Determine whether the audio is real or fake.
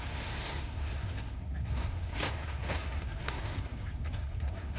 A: fake